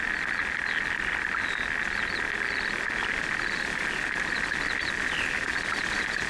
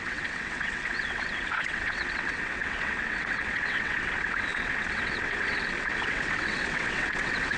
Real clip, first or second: first